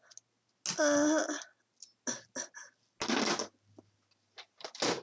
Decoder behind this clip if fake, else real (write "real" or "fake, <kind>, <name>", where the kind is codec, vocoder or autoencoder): real